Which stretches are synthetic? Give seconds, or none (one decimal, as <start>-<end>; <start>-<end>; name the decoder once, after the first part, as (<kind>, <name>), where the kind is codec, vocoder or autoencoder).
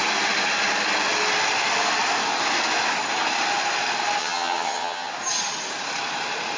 4.2-5.1 (vocoder, HiFi-GAN)